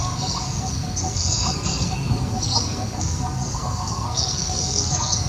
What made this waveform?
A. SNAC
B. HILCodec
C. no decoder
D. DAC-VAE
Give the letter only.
A